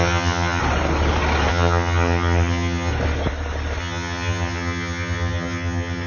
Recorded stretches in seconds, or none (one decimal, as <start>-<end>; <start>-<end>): 0.6-1.5; 2.9-3.8